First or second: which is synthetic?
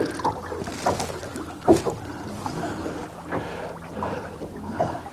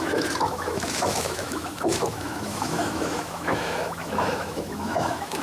second